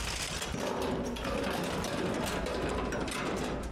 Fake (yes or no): no